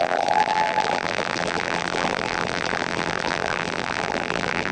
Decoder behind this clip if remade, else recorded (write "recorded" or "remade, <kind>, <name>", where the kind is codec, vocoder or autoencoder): remade, vocoder, BigVGAN v2